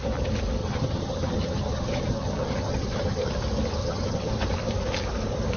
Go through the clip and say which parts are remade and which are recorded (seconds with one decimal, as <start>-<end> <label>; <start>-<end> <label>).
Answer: 0.0-0.6 recorded; 0.6-3.3 remade; 3.3-3.8 recorded; 3.8-4.3 remade; 4.3-5.6 recorded